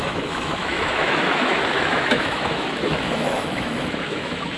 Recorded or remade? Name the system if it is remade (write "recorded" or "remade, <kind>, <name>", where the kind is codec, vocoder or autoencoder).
remade, autoencoder, DAC-VAE